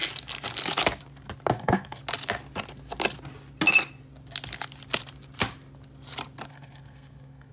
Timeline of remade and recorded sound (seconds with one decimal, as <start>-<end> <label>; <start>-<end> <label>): 0.0-1.6 recorded; 1.6-2.0 remade; 2.0-6.5 recorded; 6.5-7.5 remade

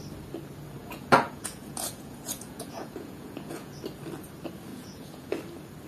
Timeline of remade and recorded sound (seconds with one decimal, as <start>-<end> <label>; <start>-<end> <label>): 0.0-0.8 recorded; 0.8-3.8 remade; 3.8-4.7 recorded; 4.7-5.3 remade; 5.3-5.9 recorded

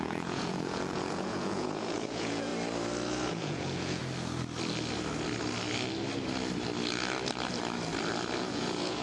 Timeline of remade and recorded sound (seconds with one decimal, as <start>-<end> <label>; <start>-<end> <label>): 0.0-2.5 remade; 2.5-3.3 recorded; 3.3-4.0 remade; 4.0-8.4 recorded; 8.4-9.0 remade

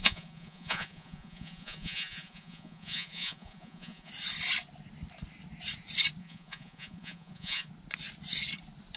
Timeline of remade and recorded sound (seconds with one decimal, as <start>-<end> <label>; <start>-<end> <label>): 0.0-4.1 remade; 4.1-6.2 recorded; 6.2-7.7 remade; 7.7-9.0 recorded

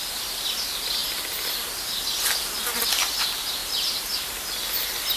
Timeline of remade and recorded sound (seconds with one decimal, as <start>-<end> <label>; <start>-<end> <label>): 0.0-5.2 recorded

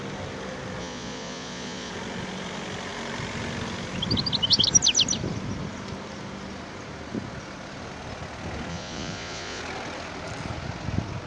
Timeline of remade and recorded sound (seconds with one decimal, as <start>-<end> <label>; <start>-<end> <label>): 0.0-0.8 recorded; 0.8-1.9 remade; 1.9-8.7 recorded; 8.7-9.6 remade; 9.6-11.3 recorded

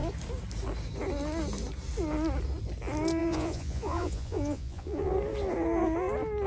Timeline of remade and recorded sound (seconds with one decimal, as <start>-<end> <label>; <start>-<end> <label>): 0.0-3.2 recorded; 3.2-5.1 remade; 5.1-6.5 recorded

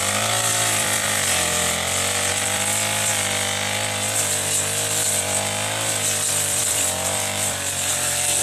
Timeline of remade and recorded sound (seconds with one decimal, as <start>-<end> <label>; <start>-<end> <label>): 0.0-3.1 remade; 3.1-6.3 recorded; 6.3-7.9 remade; 7.9-8.4 recorded